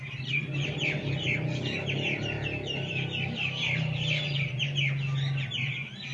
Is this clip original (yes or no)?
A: yes